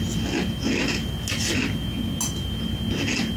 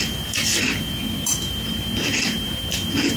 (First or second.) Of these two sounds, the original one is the first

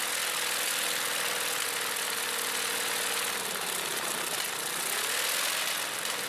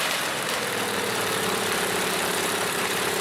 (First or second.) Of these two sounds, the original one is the first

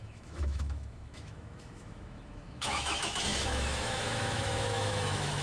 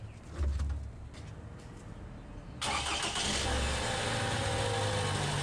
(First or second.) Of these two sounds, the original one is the second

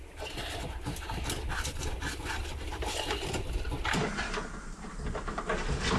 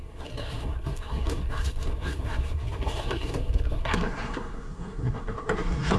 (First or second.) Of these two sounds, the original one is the first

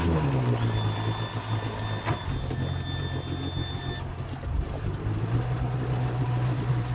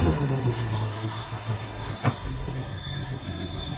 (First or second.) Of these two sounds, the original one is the first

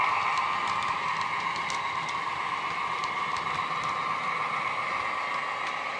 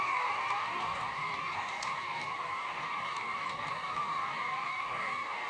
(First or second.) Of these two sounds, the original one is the first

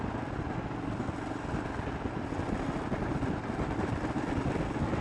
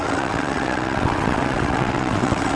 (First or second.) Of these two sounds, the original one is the first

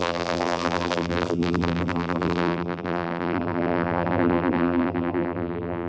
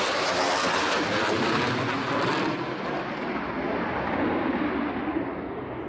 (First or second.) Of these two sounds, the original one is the second